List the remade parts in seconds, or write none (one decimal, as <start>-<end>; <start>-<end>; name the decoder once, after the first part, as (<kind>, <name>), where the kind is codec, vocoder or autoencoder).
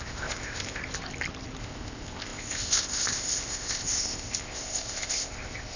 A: 0.0-0.8 (codec, ZipCodec); 1.6-5.8